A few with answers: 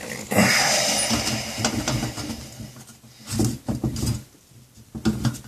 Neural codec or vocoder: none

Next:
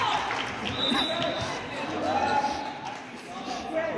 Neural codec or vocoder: vocoder, BigVGAN v2